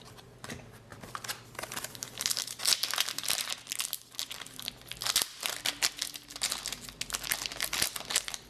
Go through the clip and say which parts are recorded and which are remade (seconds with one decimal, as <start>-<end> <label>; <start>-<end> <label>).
0.0-8.5 recorded